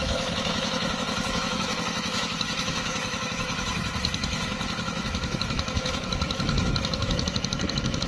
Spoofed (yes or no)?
yes